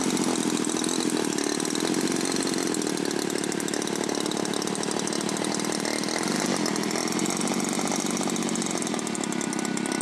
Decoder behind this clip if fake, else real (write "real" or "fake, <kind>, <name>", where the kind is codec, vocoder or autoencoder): real